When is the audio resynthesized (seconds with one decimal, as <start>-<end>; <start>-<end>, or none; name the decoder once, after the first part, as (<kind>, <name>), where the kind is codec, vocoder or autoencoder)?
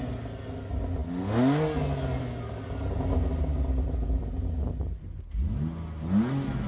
none